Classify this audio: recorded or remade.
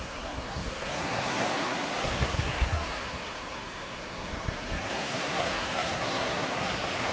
remade